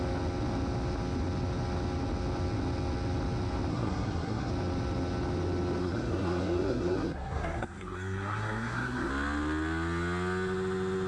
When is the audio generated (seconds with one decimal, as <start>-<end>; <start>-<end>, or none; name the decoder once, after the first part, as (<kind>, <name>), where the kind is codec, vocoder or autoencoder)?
3.7-4.5 (codec, SNAC); 5.8-9.1